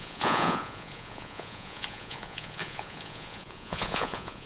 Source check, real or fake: fake